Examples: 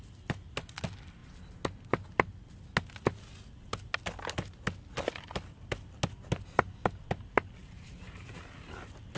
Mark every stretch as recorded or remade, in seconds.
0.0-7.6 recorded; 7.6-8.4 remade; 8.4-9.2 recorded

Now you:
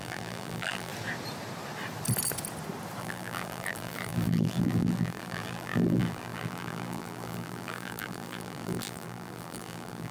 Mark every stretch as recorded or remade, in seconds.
0.0-0.9 remade; 0.9-3.0 recorded; 3.0-10.1 remade

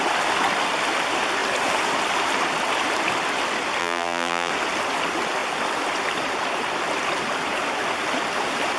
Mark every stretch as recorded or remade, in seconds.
0.0-3.8 recorded; 3.8-4.5 remade; 4.5-8.8 recorded

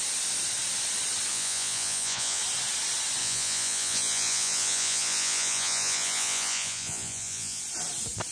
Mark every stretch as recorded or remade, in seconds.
0.0-1.3 recorded; 1.3-2.4 remade; 2.4-3.2 recorded; 3.2-7.6 remade; 7.6-8.3 recorded

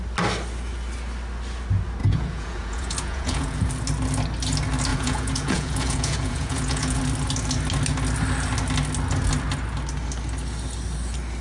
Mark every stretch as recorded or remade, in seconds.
0.0-2.0 recorded; 2.0-3.7 remade; 3.7-4.9 recorded; 4.9-7.0 remade; 7.0-11.4 recorded

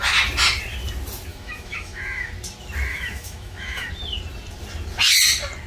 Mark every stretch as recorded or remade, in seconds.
0.0-1.3 recorded; 1.3-2.3 remade; 2.3-2.9 recorded; 2.9-3.9 remade; 3.9-5.7 recorded

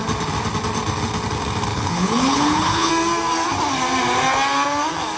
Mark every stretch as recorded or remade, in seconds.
0.0-1.7 recorded; 1.7-2.9 remade; 2.9-5.2 recorded

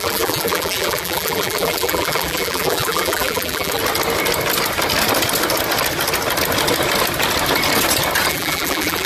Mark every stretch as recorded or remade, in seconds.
0.0-3.8 remade; 3.8-8.3 recorded; 8.3-9.1 remade